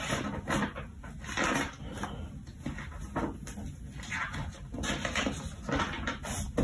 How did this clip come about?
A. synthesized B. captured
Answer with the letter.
B